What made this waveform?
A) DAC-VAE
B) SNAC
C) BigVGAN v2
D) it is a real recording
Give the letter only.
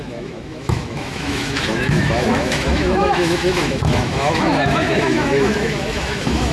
A